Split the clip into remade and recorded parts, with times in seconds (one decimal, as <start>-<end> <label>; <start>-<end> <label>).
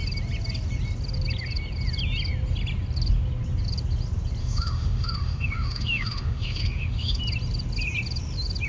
0.0-4.4 recorded; 4.4-7.2 remade; 7.2-8.7 recorded